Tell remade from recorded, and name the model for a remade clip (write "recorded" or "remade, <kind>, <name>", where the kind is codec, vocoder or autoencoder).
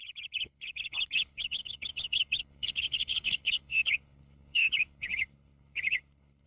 remade, codec, HILCodec